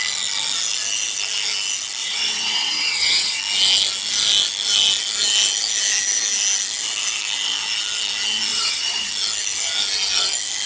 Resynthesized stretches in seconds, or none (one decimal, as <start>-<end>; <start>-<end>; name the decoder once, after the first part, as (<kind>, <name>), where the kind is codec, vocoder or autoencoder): 2.0-3.4 (vocoder, WaveNeXt); 8.5-9.1